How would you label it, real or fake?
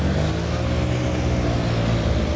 real